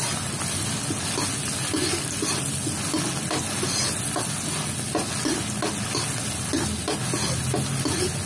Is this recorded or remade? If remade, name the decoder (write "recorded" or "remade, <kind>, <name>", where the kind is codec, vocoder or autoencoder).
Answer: recorded